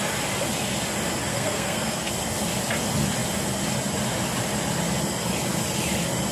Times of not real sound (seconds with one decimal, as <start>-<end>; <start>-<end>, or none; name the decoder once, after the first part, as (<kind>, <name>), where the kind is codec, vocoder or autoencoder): 1.3-2.1 (codec, SNAC)